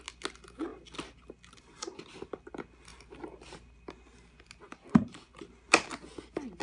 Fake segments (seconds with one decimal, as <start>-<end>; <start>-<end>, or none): none